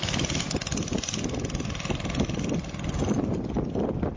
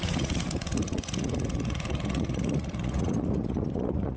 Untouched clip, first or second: first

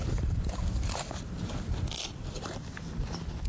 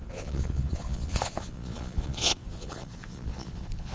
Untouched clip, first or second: first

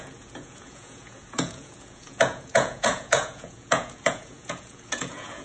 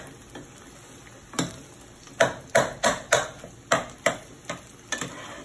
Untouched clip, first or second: second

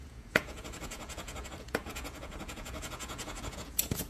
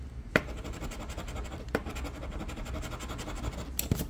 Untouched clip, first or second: second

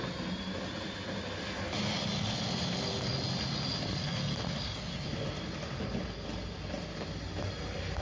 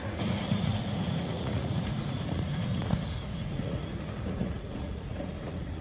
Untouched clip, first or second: first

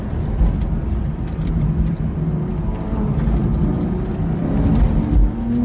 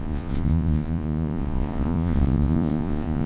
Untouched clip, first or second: first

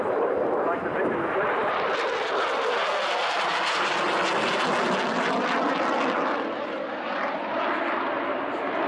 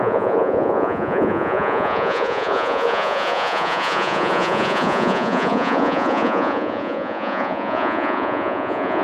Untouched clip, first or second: first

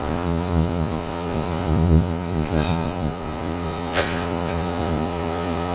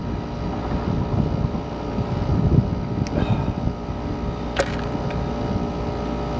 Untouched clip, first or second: second